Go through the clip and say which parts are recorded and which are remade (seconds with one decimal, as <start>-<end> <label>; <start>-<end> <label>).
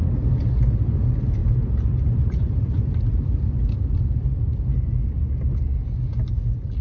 0.0-1.4 recorded; 1.4-4.7 remade; 4.7-6.8 recorded